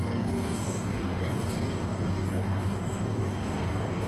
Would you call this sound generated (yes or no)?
yes